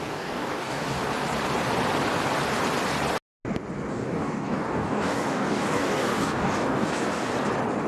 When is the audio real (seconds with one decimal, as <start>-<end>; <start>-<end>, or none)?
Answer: 1.0-3.9; 7.3-7.9